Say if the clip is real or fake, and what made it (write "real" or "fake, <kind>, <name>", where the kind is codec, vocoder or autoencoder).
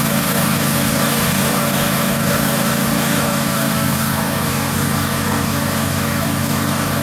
fake, codec, DAC